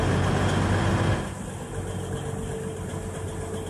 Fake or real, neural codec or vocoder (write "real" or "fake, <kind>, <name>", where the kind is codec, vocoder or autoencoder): real